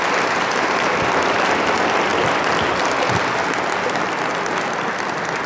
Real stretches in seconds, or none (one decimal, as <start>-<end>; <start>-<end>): 0.0-5.5